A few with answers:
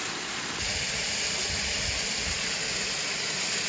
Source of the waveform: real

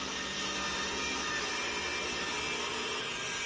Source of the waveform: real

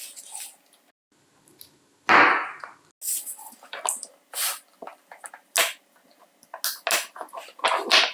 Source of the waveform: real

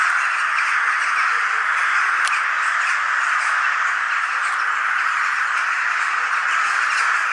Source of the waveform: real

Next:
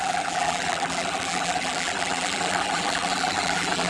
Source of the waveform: fake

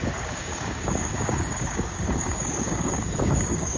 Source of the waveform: fake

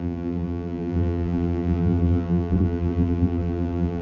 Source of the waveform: fake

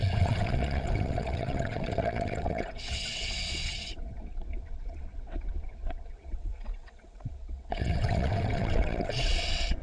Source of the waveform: fake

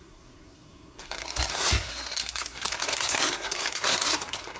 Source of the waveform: fake